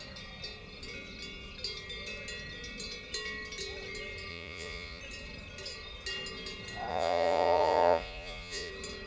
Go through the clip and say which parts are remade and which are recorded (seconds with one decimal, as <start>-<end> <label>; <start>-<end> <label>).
0.0-4.3 recorded; 4.3-5.0 remade; 5.0-6.9 recorded; 6.9-8.7 remade; 8.7-9.1 recorded